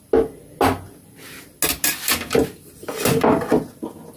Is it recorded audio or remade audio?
recorded